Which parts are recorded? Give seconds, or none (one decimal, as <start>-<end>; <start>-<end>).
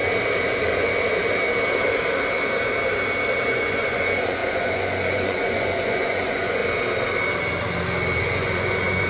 0.0-3.5; 6.6-8.2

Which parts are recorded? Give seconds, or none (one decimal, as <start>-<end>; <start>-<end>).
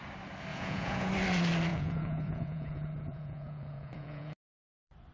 0.0-0.5; 1.1-1.7; 4.6-5.1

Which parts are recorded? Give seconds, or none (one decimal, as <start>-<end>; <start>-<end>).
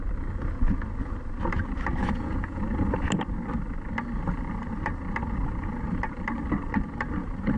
0.0-2.0; 2.6-7.6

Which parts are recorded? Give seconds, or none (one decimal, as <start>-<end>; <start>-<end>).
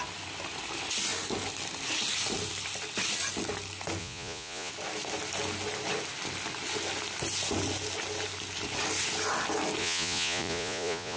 0.0-4.0; 4.7-9.8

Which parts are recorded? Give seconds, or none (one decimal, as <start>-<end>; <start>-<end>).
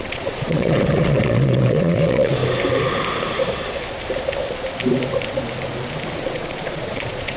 2.4-6.2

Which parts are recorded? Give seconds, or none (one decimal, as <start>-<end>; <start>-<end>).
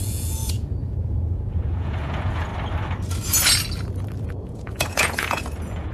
2.5-4.2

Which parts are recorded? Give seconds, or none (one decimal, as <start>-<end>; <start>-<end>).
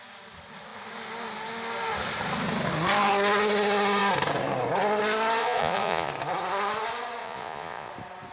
0.0-5.4; 6.1-7.2; 7.9-8.3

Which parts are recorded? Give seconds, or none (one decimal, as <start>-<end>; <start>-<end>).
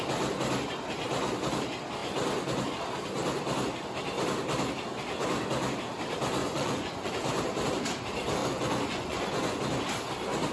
0.0-6.4; 7.1-8.4; 9.6-10.5